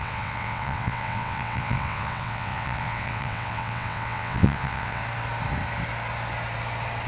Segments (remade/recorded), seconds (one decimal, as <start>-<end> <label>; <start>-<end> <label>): 0.0-5.0 remade; 5.0-7.1 recorded

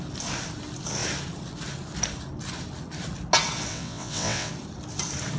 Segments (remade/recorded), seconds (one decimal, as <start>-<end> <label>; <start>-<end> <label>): 0.0-3.7 recorded; 3.7-4.5 remade; 4.5-5.4 recorded

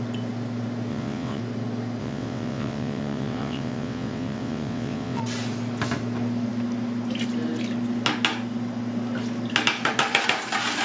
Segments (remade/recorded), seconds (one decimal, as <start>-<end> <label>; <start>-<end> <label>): 0.0-0.9 recorded; 0.9-1.4 remade; 1.4-2.0 recorded; 2.0-5.2 remade; 5.2-10.8 recorded

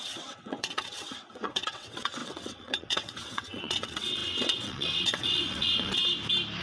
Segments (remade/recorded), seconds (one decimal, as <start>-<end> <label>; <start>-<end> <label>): 0.0-6.0 remade; 6.0-6.6 recorded

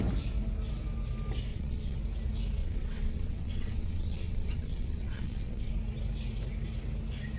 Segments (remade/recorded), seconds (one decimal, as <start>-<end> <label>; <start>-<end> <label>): 0.0-1.5 recorded; 1.5-2.0 remade; 2.0-2.6 recorded; 2.6-5.7 remade; 5.7-7.4 recorded

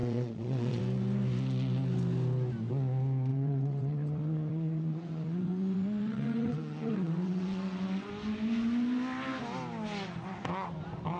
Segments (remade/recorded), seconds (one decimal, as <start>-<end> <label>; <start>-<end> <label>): 0.0-0.8 remade; 0.8-3.3 recorded; 3.3-8.1 remade; 8.1-11.2 recorded

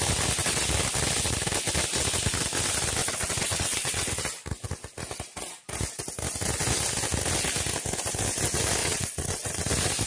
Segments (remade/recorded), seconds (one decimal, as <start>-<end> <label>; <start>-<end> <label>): 0.0-3.0 recorded; 3.0-4.2 remade; 4.2-8.8 recorded; 8.8-9.6 remade; 9.6-10.1 recorded